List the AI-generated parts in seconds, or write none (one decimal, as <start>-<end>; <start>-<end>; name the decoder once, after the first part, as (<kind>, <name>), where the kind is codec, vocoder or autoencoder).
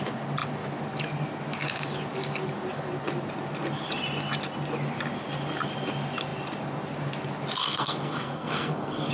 7.6-9.1 (codec, SNAC)